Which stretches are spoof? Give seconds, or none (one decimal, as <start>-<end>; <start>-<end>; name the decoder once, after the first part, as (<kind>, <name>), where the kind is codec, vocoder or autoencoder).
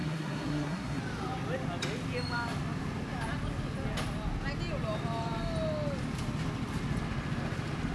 0.0-1.0 (codec, SNAC)